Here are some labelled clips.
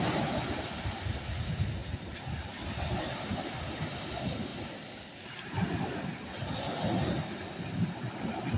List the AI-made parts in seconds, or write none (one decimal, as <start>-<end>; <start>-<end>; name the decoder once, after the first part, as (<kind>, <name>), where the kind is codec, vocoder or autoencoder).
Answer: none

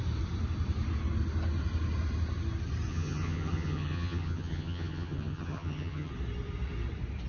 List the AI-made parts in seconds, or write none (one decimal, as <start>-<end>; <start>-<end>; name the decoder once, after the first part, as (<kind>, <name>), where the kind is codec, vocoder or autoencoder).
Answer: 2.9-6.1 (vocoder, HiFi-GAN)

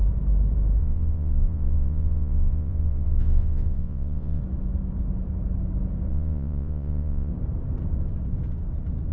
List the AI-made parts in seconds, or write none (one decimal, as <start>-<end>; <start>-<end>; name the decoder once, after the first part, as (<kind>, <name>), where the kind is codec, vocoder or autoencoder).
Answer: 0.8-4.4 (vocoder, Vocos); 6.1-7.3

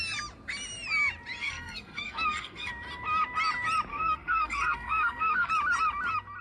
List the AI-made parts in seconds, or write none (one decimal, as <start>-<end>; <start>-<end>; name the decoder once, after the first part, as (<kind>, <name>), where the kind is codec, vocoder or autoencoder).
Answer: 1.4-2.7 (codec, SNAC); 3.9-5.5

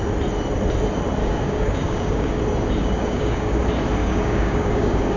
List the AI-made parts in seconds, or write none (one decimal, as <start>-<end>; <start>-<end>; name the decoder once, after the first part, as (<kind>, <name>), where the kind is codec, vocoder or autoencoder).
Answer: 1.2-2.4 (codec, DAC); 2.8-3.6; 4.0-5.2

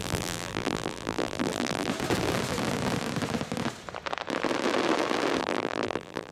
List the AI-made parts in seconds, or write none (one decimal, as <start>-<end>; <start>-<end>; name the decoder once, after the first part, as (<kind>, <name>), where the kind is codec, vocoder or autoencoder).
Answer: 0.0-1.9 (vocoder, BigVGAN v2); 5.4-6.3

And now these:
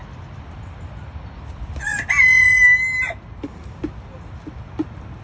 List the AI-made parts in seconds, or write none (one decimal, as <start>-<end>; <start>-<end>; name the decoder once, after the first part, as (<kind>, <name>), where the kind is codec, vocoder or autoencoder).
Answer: none

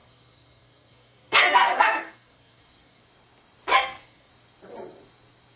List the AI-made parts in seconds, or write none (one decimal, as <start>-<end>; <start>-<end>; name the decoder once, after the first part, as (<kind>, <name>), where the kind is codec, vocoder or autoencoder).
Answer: 0.0-3.0 (codec, SNAC); 3.7-4.3